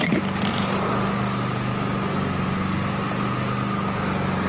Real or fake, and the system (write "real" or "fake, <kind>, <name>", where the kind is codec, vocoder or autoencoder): real